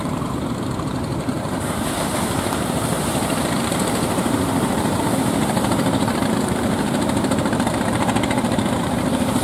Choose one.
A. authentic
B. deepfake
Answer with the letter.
B